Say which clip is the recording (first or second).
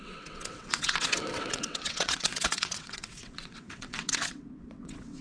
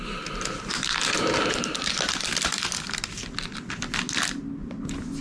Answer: second